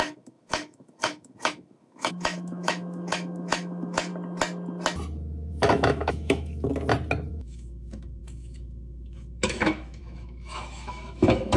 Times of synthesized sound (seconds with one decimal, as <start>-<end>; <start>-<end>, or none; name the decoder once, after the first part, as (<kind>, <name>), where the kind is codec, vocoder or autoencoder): 0.0-4.1 (autoencoder, DAC-VAE); 5.5-6.7; 7.3-11.6